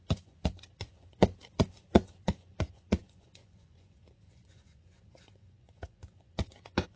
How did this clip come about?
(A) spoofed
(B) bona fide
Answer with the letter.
A